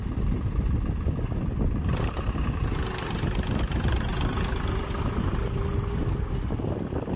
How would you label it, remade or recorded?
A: recorded